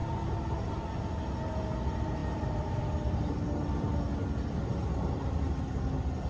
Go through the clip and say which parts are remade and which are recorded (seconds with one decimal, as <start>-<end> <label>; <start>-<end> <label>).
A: 0.0-2.2 recorded; 2.2-3.7 remade; 3.7-4.8 recorded; 4.8-5.4 remade; 5.4-6.3 recorded